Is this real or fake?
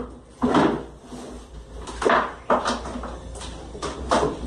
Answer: real